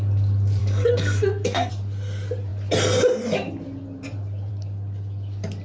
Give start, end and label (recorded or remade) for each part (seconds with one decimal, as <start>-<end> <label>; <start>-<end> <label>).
0.0-0.6 recorded; 0.6-1.7 remade; 1.7-5.6 recorded